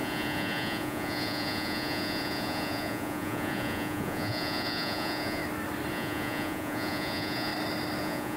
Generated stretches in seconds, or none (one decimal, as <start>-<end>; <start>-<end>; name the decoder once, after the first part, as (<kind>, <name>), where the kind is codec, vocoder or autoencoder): 0.0-5.4 (vocoder, Vocos); 5.9-7.5; 8.0-8.4